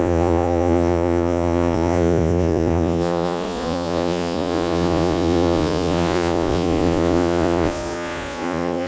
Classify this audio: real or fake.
fake